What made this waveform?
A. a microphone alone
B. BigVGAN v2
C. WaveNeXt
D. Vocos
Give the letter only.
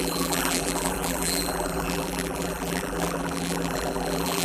B